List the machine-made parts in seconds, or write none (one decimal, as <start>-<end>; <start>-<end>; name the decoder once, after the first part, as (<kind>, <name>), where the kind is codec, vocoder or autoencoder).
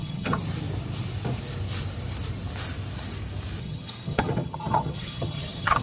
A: 0.0-0.4 (vocoder, HiFi-GAN); 3.6-5.8